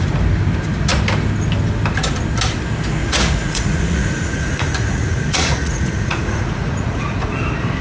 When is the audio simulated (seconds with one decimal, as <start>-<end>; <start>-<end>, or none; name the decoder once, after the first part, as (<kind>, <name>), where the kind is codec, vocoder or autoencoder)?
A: 3.0-7.3 (vocoder, Vocos)